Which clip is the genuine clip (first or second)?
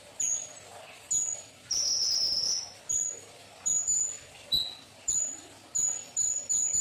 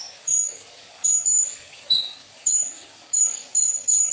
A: first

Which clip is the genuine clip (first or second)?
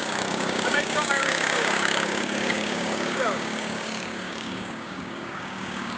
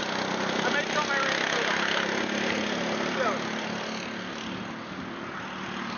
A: second